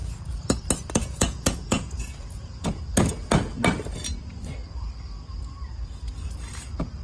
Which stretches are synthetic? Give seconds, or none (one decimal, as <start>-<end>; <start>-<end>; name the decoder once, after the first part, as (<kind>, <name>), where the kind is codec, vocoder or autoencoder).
0.0-0.6 (vocoder, Vocos); 1.0-2.8